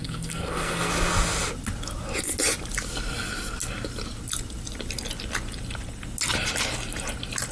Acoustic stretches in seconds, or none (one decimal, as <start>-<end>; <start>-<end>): 0.9-7.5